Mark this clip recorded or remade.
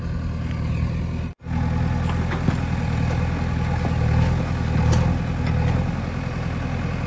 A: recorded